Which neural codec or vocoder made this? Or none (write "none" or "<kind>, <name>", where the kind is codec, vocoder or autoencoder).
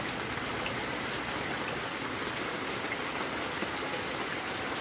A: none